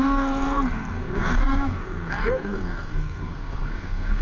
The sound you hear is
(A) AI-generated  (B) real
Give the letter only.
A